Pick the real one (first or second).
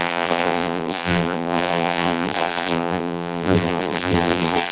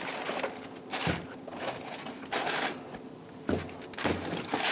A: second